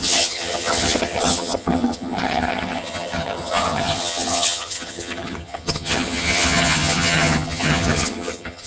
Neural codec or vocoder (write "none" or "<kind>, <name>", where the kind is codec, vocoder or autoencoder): vocoder, HiFi-GAN